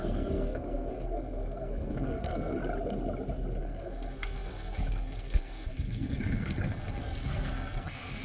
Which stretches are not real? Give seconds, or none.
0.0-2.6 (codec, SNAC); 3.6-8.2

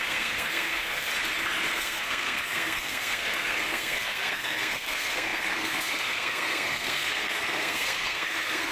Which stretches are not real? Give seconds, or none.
0.0-1.1 (codec, SNAC); 1.7-8.7

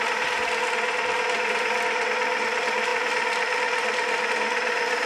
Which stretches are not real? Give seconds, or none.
none

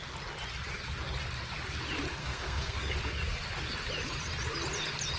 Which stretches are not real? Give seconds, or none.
2.2-2.9 (codec, SNAC)

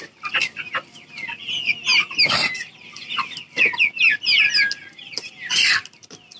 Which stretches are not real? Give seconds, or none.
none

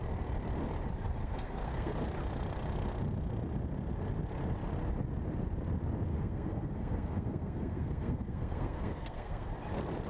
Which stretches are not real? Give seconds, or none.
1.2-1.9 (codec, SNAC); 6.1-9.5

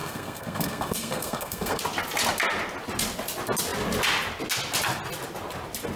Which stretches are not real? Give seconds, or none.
0.0-1.8 (codec, SNAC)

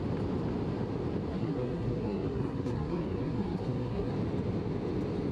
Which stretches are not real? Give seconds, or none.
1.3-4.1 (codec, SNAC)